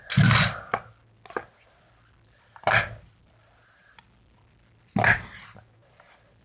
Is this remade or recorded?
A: recorded